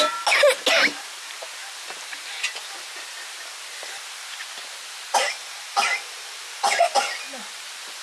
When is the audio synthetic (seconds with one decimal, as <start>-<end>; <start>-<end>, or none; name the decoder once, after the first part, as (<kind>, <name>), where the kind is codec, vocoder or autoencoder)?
none